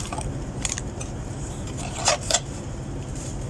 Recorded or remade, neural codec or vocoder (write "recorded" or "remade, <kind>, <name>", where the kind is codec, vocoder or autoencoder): remade, vocoder, BigVGAN v2